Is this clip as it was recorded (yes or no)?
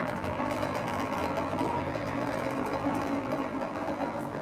no